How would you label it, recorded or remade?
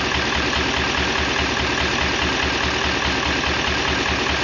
recorded